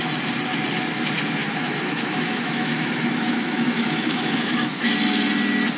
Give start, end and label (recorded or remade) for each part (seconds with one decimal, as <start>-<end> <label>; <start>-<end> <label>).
0.0-1.4 recorded; 1.4-4.9 remade; 4.9-5.8 recorded